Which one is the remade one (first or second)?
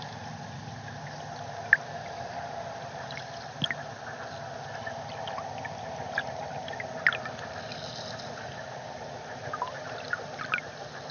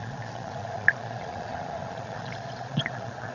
second